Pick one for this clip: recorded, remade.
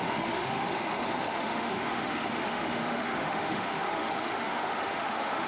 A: remade